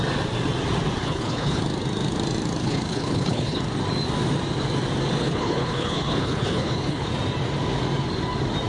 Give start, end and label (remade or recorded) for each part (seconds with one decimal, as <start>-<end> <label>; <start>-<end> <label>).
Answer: 0.0-1.0 recorded; 1.0-1.6 remade; 1.6-2.6 recorded; 2.6-3.6 remade; 3.6-5.2 recorded; 5.2-7.1 remade; 7.1-8.7 recorded